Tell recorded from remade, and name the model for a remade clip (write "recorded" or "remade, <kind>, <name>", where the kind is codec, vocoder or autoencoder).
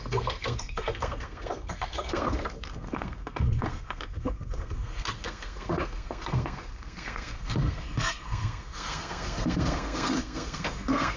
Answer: remade, codec, SNAC